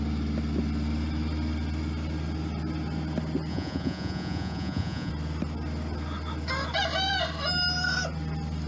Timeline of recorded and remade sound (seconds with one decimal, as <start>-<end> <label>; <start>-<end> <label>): 0.0-3.5 recorded; 3.5-5.1 remade; 5.1-8.7 recorded